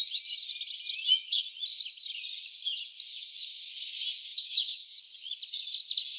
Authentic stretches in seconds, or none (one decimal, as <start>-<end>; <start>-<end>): 0.0-3.1; 3.7-4.3; 5.0-6.2